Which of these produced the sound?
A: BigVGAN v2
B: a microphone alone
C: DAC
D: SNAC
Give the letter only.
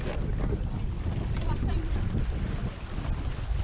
B